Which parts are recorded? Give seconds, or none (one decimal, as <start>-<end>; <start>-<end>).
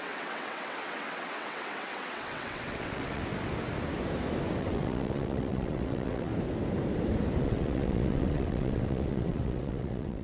3.2-4.6; 6.3-7.4